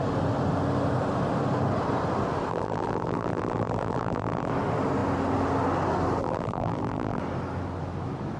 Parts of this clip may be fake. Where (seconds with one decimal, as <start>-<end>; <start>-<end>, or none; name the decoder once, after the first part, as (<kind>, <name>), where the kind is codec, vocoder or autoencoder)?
2.5-4.5 (vocoder, BigVGAN v2); 6.2-7.2